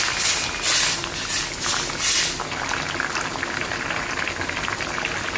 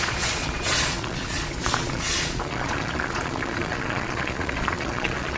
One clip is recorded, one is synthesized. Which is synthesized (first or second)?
second